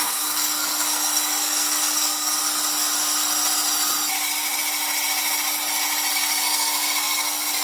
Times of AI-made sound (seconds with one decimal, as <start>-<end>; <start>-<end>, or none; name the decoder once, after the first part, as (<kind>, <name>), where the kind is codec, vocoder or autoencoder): 0.0-2.4 (codec, SNAC); 6.1-7.6